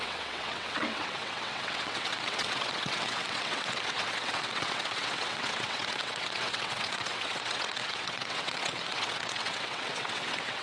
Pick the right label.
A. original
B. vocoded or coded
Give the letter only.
B